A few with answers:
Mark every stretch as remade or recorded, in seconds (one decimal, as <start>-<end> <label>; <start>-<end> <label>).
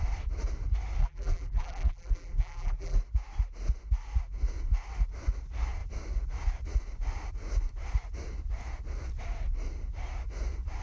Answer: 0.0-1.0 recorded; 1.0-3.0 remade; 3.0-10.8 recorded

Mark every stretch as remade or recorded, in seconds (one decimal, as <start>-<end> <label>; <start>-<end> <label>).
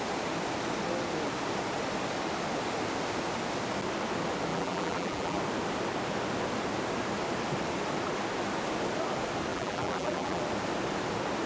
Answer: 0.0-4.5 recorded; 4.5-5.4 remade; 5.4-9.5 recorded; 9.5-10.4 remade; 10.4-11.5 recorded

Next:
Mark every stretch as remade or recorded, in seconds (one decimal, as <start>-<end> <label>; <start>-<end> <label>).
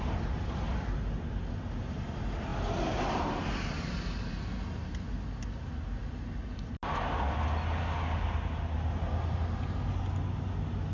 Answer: 0.0-10.9 recorded